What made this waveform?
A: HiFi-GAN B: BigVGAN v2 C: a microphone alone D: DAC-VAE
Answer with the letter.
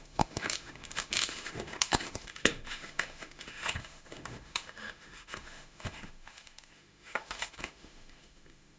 D